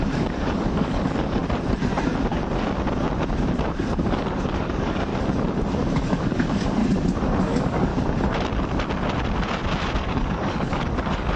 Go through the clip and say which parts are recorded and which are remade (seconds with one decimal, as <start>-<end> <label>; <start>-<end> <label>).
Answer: 0.0-1.4 remade; 1.4-3.7 recorded; 3.7-5.1 remade; 5.1-5.9 recorded; 5.9-6.8 remade; 6.8-7.4 recorded; 7.4-7.9 remade; 7.9-10.0 recorded; 10.0-11.4 remade